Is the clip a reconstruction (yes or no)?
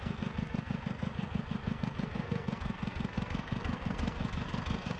yes